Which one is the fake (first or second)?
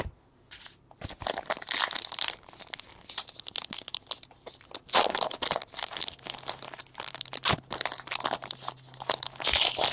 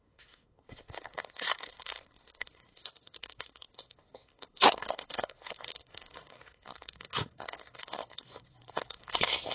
second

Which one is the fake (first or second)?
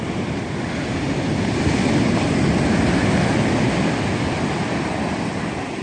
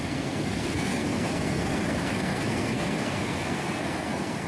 second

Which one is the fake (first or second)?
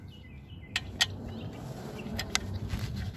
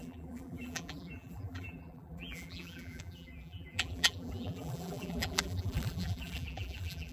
second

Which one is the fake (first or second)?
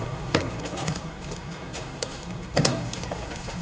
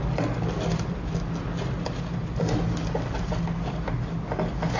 first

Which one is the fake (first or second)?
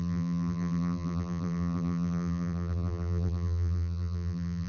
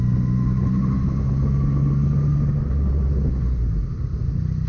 first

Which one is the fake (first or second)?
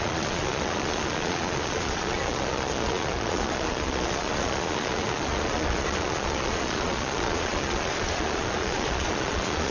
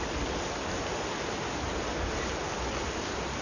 first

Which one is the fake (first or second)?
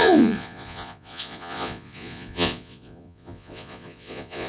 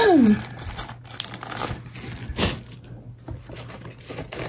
first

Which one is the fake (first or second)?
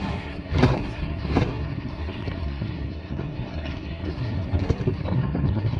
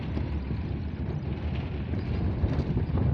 first